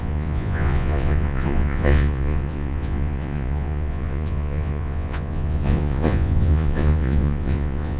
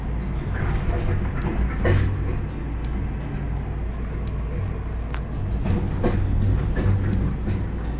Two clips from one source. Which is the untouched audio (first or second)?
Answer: second